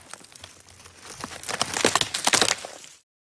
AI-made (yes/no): no